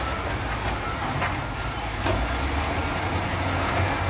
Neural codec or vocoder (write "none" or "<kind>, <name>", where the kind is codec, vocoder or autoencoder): none